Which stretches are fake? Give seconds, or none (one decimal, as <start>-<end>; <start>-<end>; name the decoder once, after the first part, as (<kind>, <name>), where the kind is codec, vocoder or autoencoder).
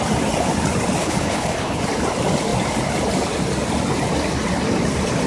1.0-1.8 (codec, HILCodec)